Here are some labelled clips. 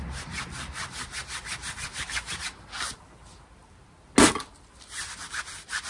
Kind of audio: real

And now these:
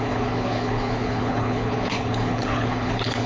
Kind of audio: fake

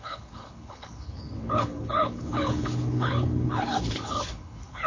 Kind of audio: fake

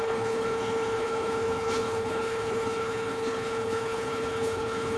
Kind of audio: fake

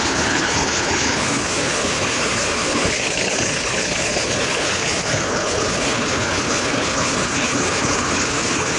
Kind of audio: fake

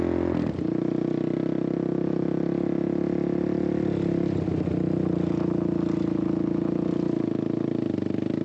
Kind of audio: real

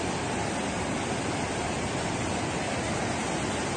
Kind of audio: real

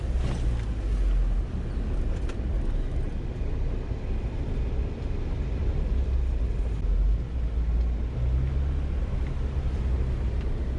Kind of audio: real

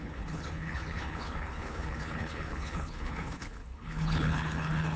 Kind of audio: fake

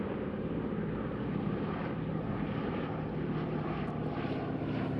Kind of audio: real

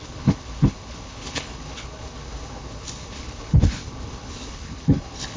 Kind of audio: fake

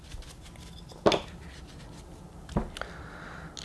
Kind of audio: real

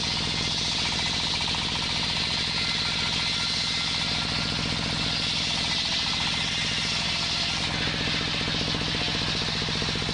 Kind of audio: real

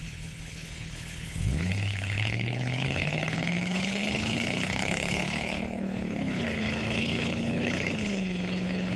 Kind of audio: fake